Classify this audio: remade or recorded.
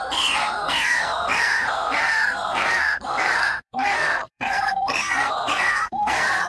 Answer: remade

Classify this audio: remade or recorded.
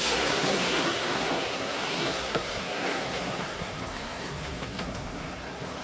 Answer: remade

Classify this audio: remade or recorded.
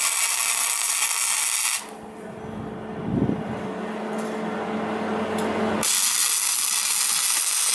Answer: recorded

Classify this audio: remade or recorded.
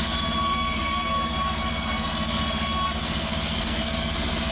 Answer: remade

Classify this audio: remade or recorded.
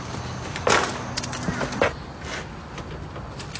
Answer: recorded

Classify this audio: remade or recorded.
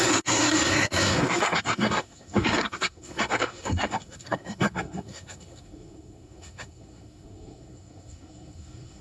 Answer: remade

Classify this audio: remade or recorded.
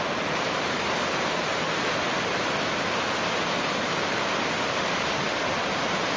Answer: recorded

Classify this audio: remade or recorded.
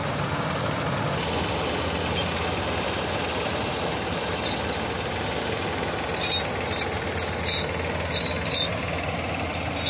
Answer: recorded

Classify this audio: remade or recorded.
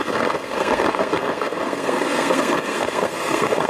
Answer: remade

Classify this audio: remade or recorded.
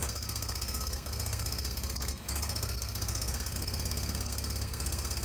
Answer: remade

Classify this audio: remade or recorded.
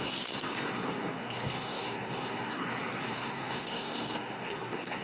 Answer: remade